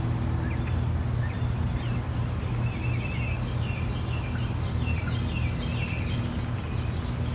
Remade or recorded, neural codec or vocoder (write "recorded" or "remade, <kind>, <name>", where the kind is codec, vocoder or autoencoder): recorded